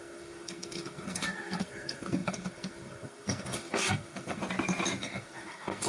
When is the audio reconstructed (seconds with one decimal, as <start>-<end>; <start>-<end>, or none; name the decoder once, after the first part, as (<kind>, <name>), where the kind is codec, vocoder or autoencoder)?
0.0-4.4 (codec, SNAC); 5.0-5.9